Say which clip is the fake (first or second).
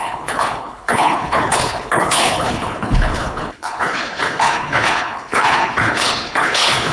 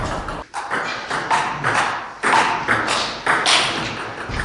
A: first